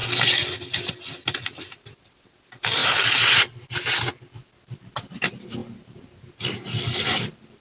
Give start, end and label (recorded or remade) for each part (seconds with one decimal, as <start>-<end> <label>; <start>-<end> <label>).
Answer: 0.0-7.6 recorded